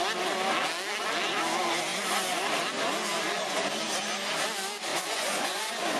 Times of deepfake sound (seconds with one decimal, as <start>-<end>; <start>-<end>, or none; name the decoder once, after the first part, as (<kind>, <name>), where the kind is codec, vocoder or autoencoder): 4.9-6.0 (vocoder, Vocos)